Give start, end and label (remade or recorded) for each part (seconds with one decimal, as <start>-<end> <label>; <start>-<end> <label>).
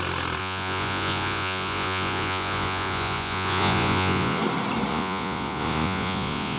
0.0-0.4 recorded; 0.4-4.4 remade; 4.4-4.9 recorded; 4.9-6.6 remade